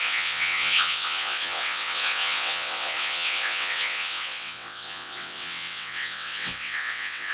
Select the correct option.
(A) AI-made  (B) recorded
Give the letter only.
A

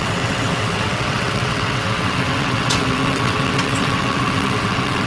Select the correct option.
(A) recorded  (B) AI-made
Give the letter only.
B